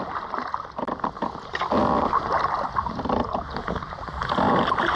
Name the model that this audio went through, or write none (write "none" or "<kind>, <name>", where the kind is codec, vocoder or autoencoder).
none